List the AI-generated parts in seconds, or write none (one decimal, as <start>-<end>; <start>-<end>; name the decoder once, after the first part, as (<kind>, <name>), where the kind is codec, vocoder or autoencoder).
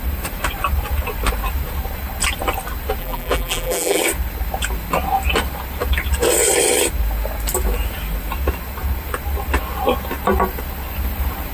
3.0-4.0 (vocoder, BigVGAN v2)